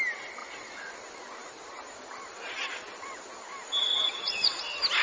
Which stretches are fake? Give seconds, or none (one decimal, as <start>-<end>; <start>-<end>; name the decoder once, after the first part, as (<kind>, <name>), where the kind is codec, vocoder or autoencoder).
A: 0.4-0.9 (vocoder, Vocos); 3.8-4.6